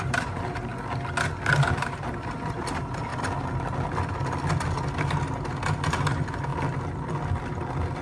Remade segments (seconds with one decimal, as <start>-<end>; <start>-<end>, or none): 0.0-0.7; 1.7-3.1; 5.9-6.5